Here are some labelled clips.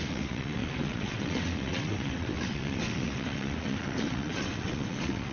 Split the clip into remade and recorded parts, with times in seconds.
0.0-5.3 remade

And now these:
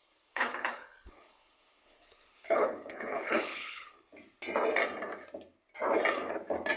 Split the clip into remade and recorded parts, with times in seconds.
0.0-4.1 remade; 4.1-6.8 recorded

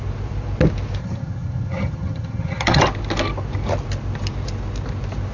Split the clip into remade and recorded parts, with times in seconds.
0.0-1.0 recorded; 1.0-2.8 remade; 2.8-5.3 recorded